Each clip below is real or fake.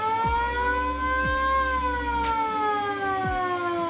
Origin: real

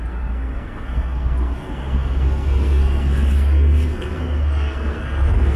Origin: fake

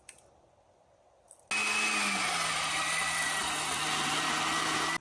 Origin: real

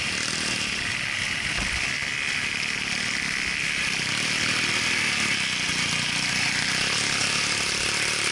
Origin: real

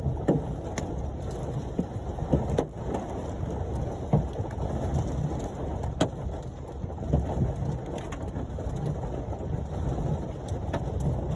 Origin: real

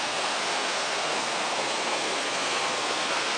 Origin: fake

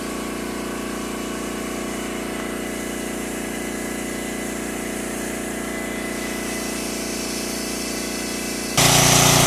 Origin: real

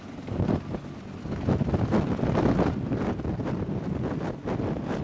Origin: real